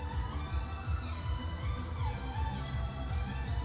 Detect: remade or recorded recorded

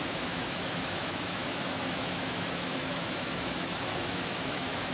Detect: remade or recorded remade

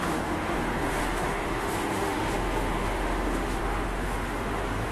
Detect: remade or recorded remade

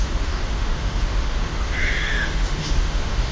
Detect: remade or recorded remade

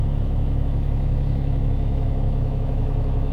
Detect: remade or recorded remade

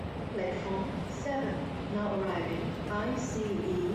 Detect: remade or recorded recorded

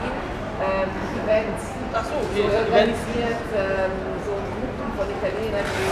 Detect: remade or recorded recorded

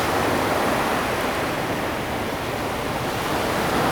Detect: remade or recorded recorded